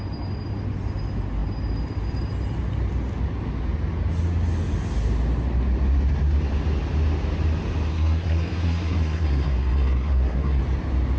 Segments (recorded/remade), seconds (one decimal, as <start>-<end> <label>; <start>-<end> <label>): 0.0-7.9 recorded; 7.9-10.6 remade; 10.6-11.2 recorded